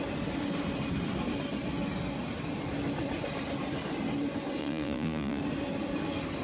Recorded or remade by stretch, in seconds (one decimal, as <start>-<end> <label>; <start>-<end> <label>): 0.0-4.6 recorded; 4.6-5.4 remade; 5.4-6.4 recorded